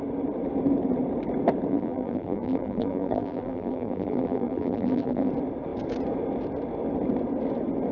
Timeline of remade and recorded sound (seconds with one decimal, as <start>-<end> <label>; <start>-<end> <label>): 0.0-1.7 recorded; 1.7-5.3 remade; 5.3-7.9 recorded